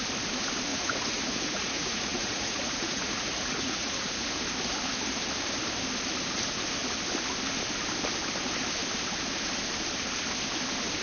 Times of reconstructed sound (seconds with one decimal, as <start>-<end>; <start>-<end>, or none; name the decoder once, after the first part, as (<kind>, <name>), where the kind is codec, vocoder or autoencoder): 0.7-4.4 (vocoder, Vocos)